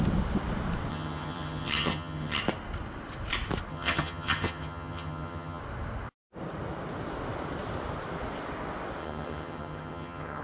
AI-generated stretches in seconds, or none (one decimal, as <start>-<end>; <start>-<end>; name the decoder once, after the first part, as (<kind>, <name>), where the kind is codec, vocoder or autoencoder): 0.9-2.4 (vocoder, HiFi-GAN); 3.7-5.6; 9.0-10.4